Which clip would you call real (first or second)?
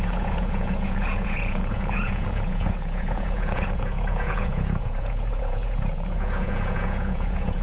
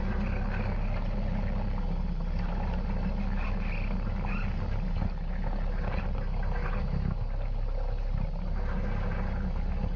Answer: second